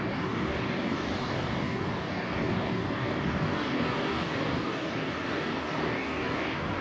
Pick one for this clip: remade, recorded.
remade